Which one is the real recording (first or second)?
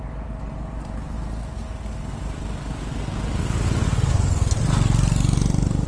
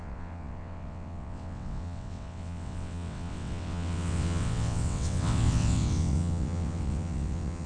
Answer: first